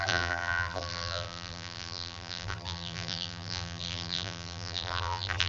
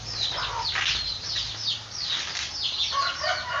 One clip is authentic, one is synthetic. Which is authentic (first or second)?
second